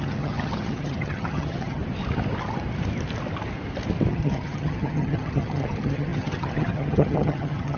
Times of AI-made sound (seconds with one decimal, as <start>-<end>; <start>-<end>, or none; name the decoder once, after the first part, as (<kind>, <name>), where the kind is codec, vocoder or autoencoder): 0.0-1.8 (vocoder, HiFi-GAN); 4.1-7.8